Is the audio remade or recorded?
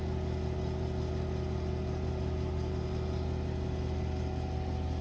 recorded